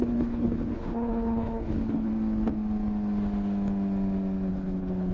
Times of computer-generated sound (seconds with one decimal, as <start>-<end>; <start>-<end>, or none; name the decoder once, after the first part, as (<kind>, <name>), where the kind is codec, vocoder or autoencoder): 0.0-2.1 (codec, HILCodec); 4.5-5.1